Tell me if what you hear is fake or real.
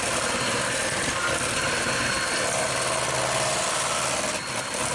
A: real